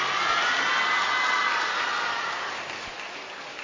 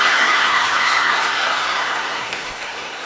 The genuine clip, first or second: first